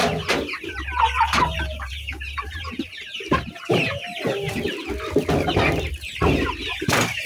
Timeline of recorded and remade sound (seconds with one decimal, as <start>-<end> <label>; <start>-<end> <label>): 0.0-1.0 recorded; 1.0-3.8 remade; 3.8-6.8 recorded; 6.8-7.3 remade